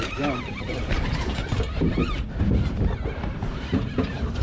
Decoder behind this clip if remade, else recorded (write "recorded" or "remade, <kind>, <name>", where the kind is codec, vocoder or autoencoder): recorded